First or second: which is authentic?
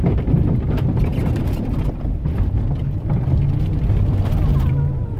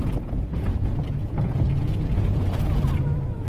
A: first